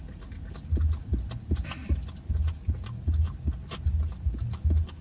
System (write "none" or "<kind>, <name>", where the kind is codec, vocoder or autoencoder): none